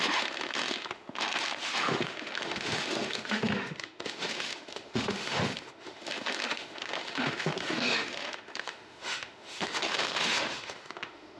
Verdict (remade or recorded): remade